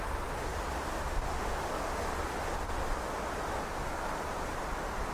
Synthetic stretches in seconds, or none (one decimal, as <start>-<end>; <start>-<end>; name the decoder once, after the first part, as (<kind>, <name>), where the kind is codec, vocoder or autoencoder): 0.9-1.5 (autoencoder, DAC-VAE)